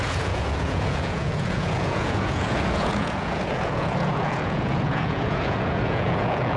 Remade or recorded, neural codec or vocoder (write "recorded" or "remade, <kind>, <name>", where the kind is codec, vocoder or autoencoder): remade, vocoder, Vocos